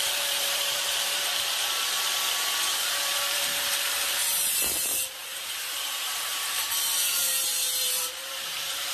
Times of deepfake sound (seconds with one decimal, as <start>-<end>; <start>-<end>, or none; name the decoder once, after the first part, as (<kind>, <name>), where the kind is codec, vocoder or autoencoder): 0.0-1.3 (vocoder, BigVGAN v2); 2.7-8.9